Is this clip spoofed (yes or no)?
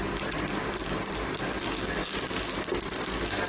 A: no